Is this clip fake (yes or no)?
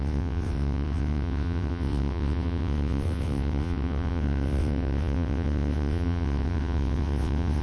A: yes